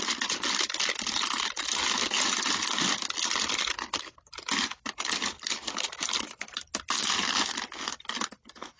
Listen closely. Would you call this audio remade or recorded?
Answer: recorded